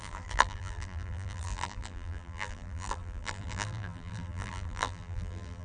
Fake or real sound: fake